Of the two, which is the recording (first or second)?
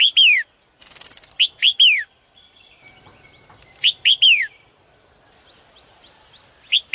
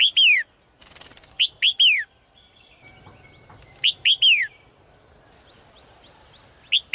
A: second